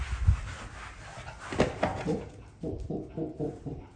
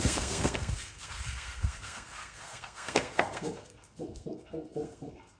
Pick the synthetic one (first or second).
second